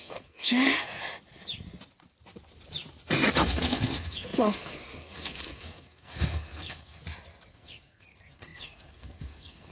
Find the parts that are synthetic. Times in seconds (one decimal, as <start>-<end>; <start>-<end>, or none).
0.0-1.0; 3.3-7.0; 7.5-9.7